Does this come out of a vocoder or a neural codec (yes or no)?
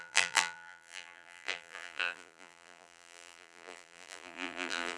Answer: yes